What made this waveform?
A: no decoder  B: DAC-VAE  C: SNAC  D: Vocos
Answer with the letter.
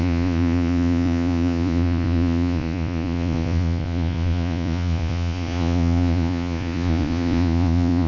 D